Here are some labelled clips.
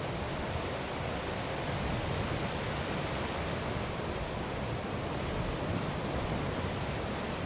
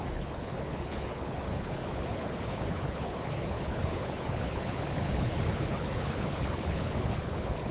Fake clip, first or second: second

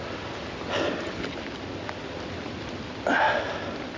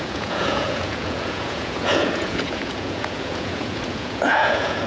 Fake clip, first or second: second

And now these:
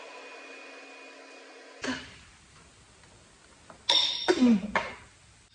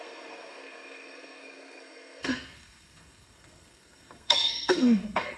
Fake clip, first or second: second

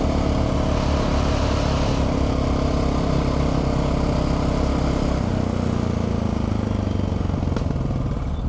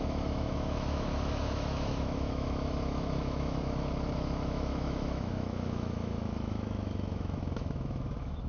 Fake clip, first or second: second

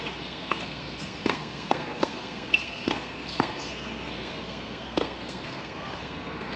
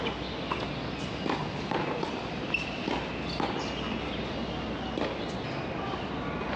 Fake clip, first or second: first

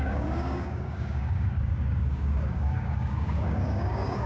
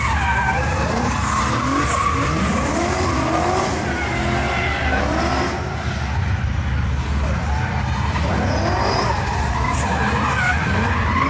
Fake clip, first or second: first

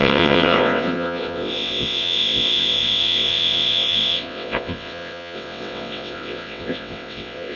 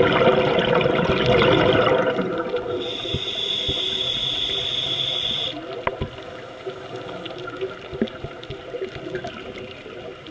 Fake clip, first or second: first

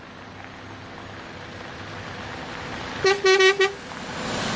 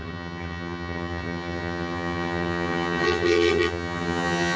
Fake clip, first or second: second